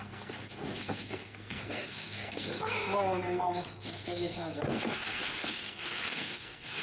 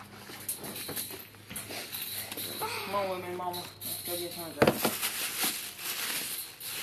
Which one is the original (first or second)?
second